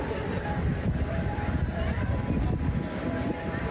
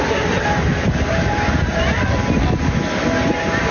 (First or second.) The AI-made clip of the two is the first